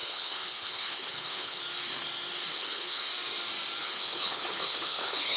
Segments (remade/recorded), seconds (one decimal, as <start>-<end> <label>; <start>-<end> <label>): 0.0-1.6 remade; 1.6-2.5 recorded; 2.5-3.1 remade; 3.1-3.8 recorded; 3.8-5.4 remade